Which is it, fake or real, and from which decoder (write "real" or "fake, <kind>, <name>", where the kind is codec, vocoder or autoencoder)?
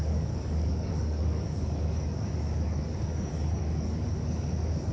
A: fake, codec, DAC